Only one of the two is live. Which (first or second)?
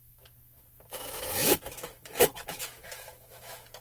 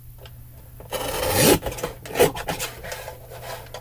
second